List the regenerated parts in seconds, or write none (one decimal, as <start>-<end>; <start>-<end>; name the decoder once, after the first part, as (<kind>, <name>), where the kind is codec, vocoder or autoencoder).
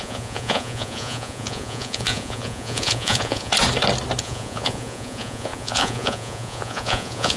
0.0-3.5 (vocoder, Vocos); 4.2-7.4